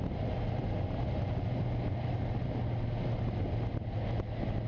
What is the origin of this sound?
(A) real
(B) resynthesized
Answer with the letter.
A